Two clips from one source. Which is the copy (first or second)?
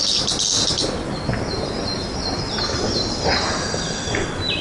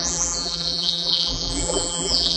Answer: second